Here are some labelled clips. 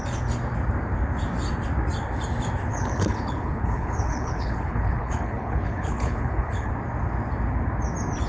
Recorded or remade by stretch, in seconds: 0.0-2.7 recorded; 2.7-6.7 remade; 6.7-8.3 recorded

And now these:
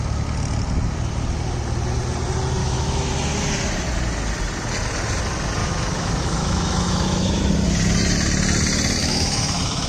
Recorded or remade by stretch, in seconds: 0.0-2.6 recorded; 2.6-3.1 remade; 3.1-5.6 recorded; 5.6-7.5 remade; 7.5-9.0 recorded; 9.0-9.9 remade

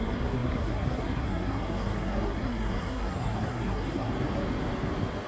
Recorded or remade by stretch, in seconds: 0.0-4.1 remade; 4.1-5.3 recorded

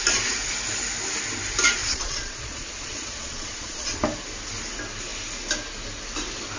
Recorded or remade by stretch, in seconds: 0.0-1.8 recorded; 1.8-4.0 remade; 4.0-6.6 recorded

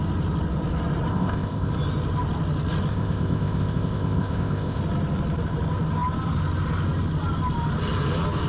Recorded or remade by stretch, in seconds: 0.0-1.1 recorded; 1.1-1.7 remade; 1.7-2.9 recorded; 2.9-4.8 remade; 4.8-8.5 recorded

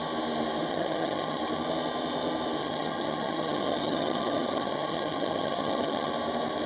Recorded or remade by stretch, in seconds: 0.0-0.7 recorded; 0.7-1.4 remade; 1.4-2.6 recorded; 2.6-6.1 remade; 6.1-6.7 recorded

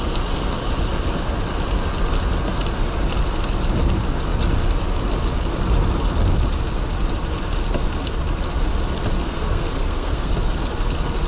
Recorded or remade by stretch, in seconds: 0.0-9.2 recorded; 9.2-10.3 remade; 10.3-11.3 recorded